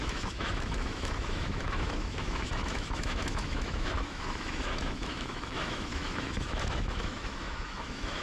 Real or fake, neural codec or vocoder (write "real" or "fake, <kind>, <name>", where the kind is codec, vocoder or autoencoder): fake, autoencoder, DAC-VAE